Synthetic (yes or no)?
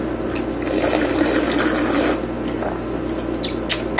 no